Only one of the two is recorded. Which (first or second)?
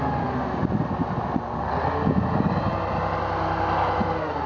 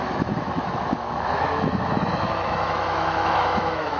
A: first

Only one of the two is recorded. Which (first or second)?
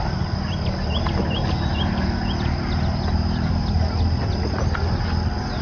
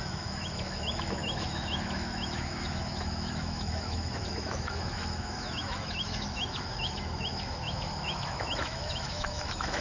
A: first